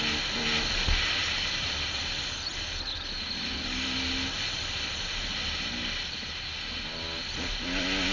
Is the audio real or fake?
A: real